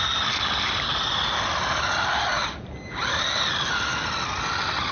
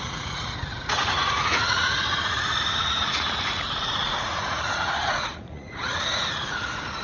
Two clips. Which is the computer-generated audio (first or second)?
second